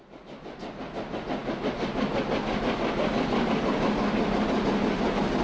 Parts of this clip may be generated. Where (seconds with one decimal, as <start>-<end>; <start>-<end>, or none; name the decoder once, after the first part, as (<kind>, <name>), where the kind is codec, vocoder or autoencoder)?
none